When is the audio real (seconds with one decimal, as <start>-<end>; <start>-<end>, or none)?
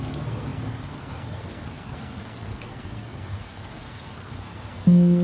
none